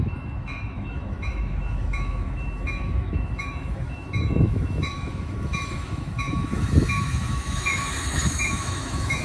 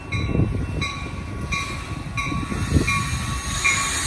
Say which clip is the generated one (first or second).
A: first